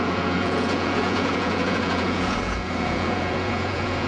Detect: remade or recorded remade